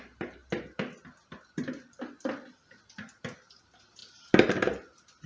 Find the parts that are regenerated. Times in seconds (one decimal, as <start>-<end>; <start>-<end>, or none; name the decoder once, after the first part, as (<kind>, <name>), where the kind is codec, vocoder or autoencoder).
none